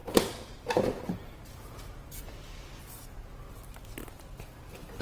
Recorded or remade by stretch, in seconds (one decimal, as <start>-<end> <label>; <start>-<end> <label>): 0.0-5.0 recorded